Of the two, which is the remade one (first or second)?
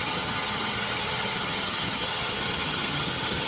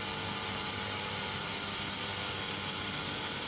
first